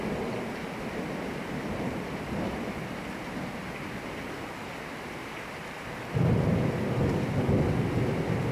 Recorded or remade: recorded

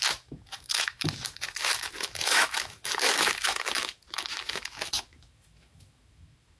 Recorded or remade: remade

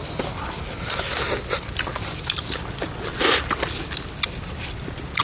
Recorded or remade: recorded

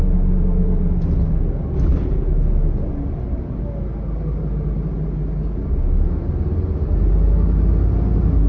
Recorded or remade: recorded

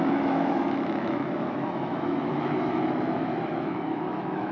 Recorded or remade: remade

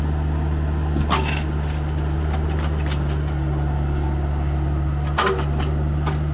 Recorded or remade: recorded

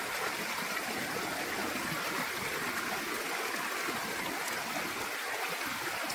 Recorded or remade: recorded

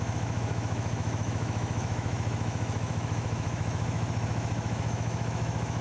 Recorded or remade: remade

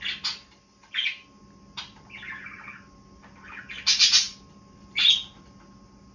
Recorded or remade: recorded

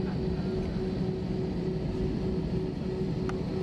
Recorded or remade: recorded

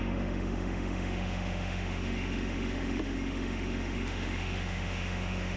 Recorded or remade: remade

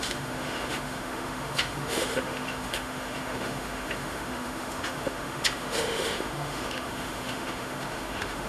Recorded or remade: remade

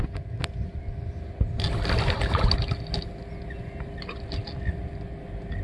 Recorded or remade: recorded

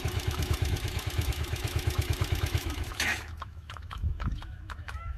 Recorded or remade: remade